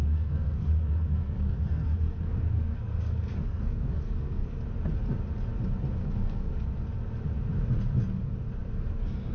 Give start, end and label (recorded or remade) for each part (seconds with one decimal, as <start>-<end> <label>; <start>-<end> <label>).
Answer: 0.0-4.6 remade; 4.6-6.0 recorded; 6.0-6.5 remade; 6.5-9.3 recorded